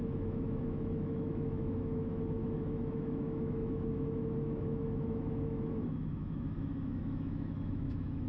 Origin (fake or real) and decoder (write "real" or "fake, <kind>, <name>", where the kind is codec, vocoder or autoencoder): fake, autoencoder, DAC-VAE